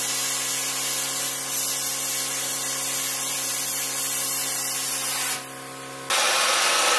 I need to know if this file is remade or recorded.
recorded